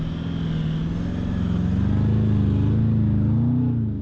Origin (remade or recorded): recorded